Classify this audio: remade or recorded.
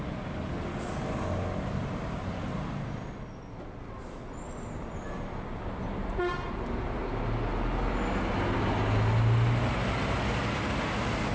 recorded